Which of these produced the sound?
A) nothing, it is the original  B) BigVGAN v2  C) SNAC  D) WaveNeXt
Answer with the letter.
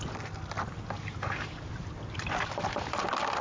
A